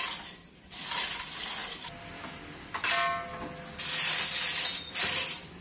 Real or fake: real